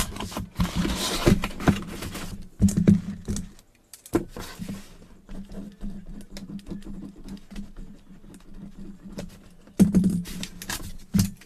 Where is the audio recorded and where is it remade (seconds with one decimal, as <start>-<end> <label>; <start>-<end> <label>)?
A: 0.0-11.5 recorded